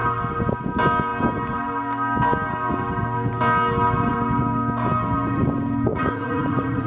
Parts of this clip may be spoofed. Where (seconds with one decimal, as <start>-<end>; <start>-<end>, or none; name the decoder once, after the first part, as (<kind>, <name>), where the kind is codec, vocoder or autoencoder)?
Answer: 5.9-6.9 (vocoder, Vocos)